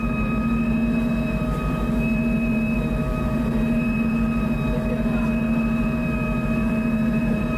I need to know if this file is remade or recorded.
remade